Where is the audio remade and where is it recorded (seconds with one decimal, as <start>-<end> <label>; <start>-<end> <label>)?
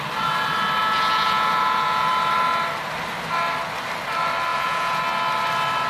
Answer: 0.0-0.8 recorded; 0.8-2.1 remade; 2.1-4.5 recorded; 4.5-5.0 remade; 5.0-5.9 recorded